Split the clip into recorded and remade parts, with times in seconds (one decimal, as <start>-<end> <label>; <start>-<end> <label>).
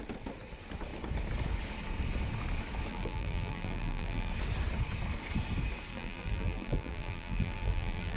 0.0-2.9 recorded; 2.9-4.3 remade; 4.3-5.9 recorded; 5.9-8.2 remade